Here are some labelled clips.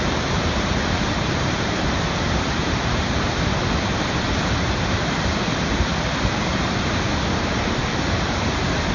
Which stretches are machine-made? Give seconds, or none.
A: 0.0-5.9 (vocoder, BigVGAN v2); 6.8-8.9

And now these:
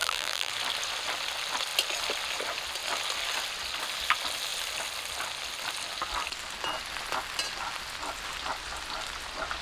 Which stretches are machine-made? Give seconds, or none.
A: 0.0-0.5 (vocoder, BigVGAN v2)

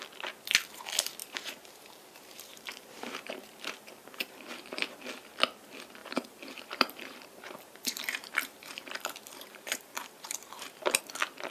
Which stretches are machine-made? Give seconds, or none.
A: 1.2-4.9 (vocoder, BigVGAN v2); 6.0-11.0

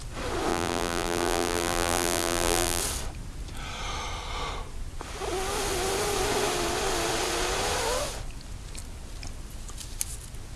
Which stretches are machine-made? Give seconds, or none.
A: 0.5-2.8 (vocoder, BigVGAN v2)

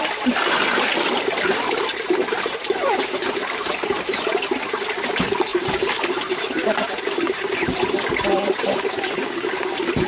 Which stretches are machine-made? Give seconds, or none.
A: 1.9-3.7 (vocoder, BigVGAN v2); 5.5-8.7

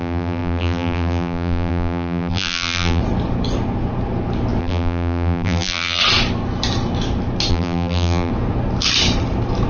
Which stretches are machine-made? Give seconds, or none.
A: 0.0-3.0 (vocoder, BigVGAN v2); 4.6-6.0; 7.5-8.3